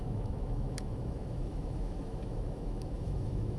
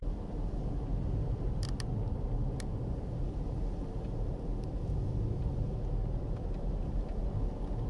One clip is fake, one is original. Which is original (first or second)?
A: second